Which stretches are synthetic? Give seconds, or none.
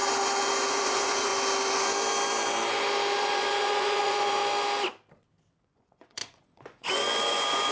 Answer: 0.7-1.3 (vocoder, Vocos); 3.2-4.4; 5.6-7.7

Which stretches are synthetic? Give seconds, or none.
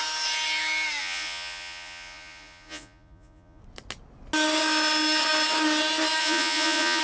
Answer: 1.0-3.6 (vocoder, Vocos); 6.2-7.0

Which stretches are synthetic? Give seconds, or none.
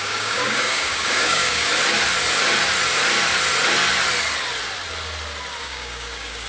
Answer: 0.0-1.7 (codec, DAC); 5.6-6.5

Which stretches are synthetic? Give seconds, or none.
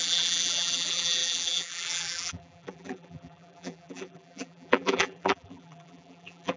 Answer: 0.0-6.6 (vocoder, BigVGAN v2)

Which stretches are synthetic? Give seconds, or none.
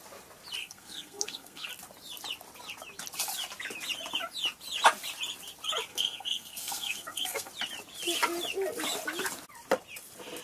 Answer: 0.6-1.7 (codec, SNAC); 5.9-7.5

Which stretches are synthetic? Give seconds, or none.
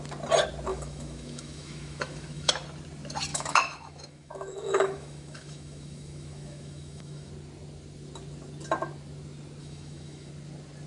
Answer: 0.7-2.5 (autoencoder, DAC-VAE); 3.3-7.3; 9.6-10.3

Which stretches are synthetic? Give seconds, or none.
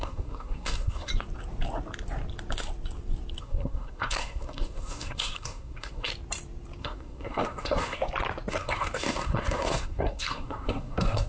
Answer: 0.0-1.1 (codec, SNAC); 3.4-6.1; 6.8-8.0; 8.5-11.3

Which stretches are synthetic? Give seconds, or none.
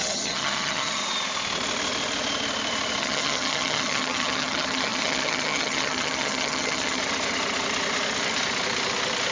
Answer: 0.0-1.0 (vocoder, HiFi-GAN); 3.0-7.0